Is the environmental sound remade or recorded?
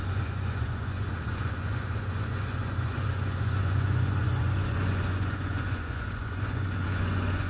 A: remade